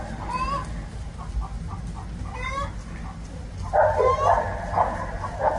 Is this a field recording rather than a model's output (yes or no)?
yes